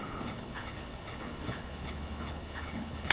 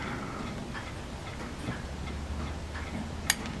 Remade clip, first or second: first